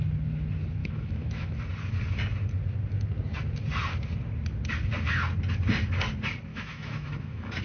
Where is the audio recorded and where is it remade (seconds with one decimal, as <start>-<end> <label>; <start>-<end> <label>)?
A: 0.0-0.8 recorded; 0.8-1.6 remade; 1.6-6.5 recorded; 6.5-7.6 remade

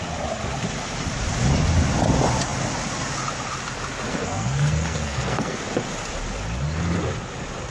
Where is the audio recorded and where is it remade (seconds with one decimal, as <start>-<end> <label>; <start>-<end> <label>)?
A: 0.0-4.1 recorded; 4.1-5.6 remade; 5.6-7.7 recorded

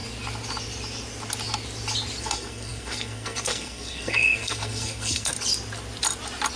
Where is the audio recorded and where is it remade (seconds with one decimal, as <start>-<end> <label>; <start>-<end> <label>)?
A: 0.0-2.2 recorded; 2.2-5.3 remade; 5.3-6.6 recorded

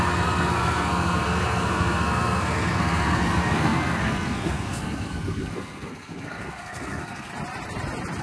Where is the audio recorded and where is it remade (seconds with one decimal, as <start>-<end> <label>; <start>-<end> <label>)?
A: 0.0-7.3 remade; 7.3-8.2 recorded

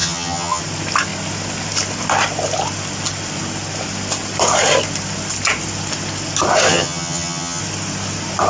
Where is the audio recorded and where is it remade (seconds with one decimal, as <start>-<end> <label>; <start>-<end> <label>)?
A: 0.0-0.6 remade; 0.6-6.7 recorded; 6.7-7.6 remade; 7.6-8.5 recorded